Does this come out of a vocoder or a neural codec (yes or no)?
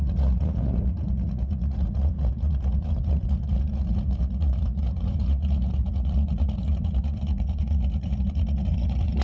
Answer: yes